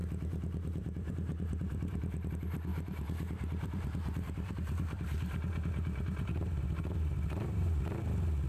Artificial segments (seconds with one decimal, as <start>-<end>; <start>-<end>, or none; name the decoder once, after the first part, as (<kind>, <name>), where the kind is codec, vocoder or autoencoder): 0.0-2.3 (vocoder, BigVGAN v2); 2.7-7.8